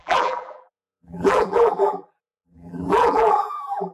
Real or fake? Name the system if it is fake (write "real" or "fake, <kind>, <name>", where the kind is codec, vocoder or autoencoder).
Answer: fake, vocoder, BigVGAN v2